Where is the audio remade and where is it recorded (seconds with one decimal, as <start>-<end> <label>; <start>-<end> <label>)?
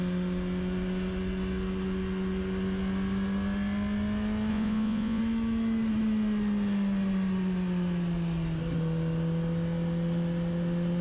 0.0-4.5 recorded; 4.5-5.2 remade; 5.2-11.0 recorded